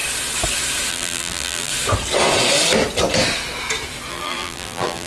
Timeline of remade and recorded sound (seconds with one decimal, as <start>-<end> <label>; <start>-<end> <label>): 0.0-0.9 recorded; 0.9-1.7 remade; 1.7-4.1 recorded; 4.1-5.1 remade